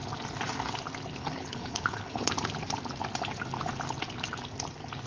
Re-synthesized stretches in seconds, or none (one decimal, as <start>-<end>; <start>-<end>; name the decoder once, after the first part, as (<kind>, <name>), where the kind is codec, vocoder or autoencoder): 1.2-2.3 (codec, HILCodec)